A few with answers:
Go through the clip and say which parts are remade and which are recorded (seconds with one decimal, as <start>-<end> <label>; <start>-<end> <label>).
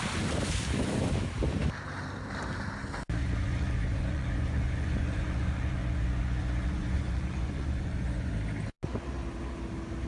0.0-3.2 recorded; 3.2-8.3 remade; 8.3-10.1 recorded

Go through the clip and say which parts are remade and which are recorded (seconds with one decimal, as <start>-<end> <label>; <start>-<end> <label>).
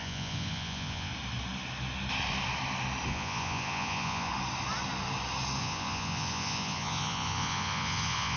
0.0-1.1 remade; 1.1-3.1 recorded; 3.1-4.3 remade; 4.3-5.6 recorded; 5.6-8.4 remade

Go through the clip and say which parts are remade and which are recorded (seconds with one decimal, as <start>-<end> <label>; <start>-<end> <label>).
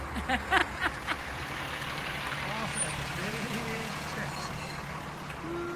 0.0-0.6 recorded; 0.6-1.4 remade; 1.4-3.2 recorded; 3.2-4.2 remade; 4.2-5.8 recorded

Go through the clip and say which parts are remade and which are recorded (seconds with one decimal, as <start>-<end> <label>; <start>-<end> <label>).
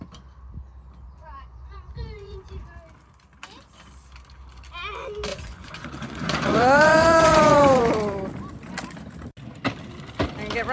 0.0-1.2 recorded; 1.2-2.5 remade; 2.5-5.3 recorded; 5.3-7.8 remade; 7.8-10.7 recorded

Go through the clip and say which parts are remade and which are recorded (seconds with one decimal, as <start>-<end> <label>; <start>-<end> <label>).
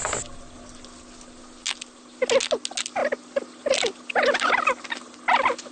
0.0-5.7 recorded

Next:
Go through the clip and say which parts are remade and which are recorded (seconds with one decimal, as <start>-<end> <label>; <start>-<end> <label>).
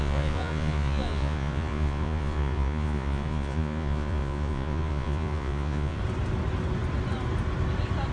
0.0-6.0 remade; 6.0-8.1 recorded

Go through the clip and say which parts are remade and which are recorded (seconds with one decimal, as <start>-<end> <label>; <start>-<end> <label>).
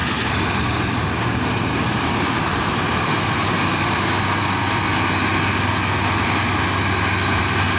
0.0-7.8 recorded